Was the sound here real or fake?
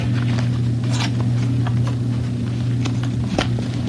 real